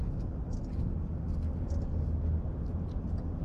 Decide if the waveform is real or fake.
real